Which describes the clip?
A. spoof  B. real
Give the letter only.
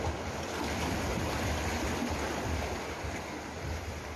B